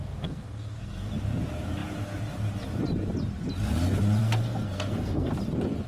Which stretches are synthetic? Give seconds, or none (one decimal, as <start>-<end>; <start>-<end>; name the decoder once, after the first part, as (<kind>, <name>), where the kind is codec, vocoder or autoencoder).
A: 0.0-1.1 (codec, SNAC); 4.2-5.3